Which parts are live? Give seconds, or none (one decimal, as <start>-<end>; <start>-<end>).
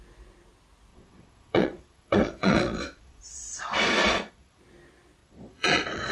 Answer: 0.0-0.9; 4.6-5.2